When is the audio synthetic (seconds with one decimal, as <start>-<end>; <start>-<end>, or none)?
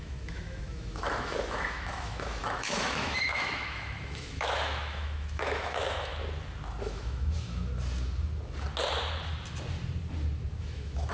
0.0-6.1; 6.8-7.7; 10.6-11.1